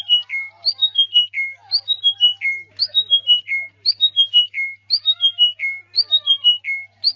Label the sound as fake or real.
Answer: real